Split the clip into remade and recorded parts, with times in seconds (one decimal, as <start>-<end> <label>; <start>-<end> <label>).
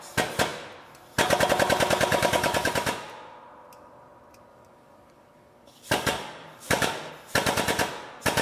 0.0-2.1 recorded; 2.1-2.7 remade; 2.7-4.5 recorded; 4.5-7.1 remade; 7.1-8.4 recorded